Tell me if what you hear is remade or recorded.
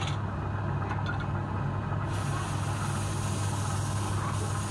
recorded